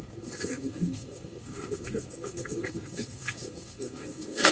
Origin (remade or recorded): remade